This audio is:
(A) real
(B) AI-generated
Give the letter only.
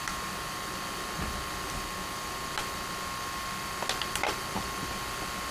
A